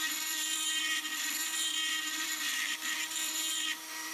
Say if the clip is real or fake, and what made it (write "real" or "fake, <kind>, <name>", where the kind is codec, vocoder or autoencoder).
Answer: fake, vocoder, BigVGAN v2